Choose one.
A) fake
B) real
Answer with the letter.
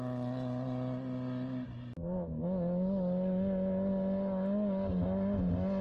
B